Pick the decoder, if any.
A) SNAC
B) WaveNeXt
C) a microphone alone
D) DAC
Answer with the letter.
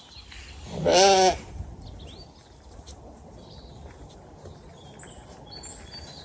C